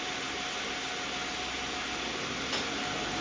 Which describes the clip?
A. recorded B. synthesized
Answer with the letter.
A